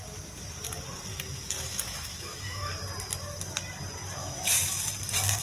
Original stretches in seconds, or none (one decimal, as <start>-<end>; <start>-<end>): 0.0-1.1; 2.7-4.2; 4.9-5.4